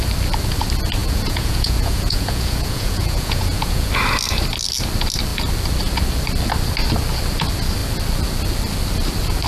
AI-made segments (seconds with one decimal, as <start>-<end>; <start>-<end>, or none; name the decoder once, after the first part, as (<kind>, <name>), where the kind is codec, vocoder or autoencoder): 1.0-3.9 (vocoder, Vocos)